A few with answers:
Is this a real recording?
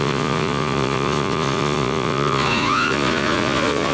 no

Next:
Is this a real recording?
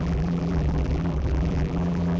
no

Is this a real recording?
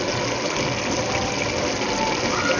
yes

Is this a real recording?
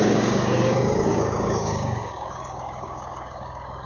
no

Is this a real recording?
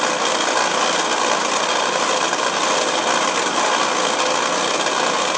yes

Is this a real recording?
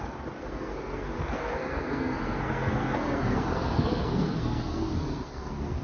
no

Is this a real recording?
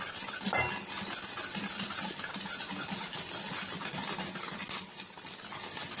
yes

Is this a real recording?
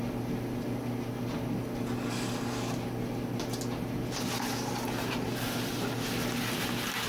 yes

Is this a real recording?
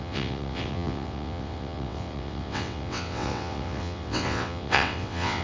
no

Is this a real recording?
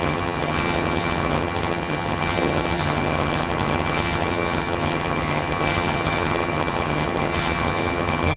no